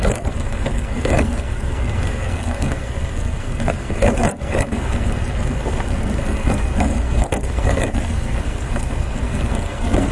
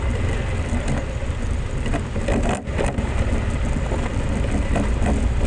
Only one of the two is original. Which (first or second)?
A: second